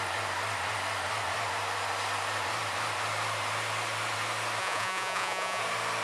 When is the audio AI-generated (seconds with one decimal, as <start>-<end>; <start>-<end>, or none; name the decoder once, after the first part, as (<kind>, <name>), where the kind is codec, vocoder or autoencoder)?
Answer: 4.6-5.6 (vocoder, Vocos)